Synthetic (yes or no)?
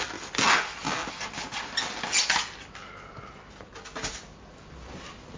no